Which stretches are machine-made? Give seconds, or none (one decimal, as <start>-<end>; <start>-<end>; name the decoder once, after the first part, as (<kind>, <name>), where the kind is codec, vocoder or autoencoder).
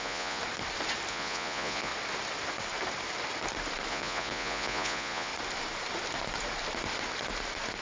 0.0-0.4 (vocoder, Vocos); 1.1-1.9; 3.9-5.3